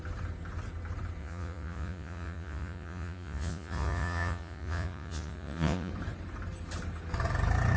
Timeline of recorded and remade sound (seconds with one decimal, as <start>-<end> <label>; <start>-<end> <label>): 0.0-1.2 recorded; 1.2-5.9 remade; 5.9-7.8 recorded